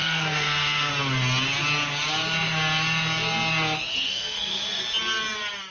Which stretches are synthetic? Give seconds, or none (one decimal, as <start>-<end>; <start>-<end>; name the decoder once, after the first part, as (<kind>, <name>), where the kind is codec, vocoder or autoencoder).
0.0-0.9 (codec, SNAC); 3.9-4.8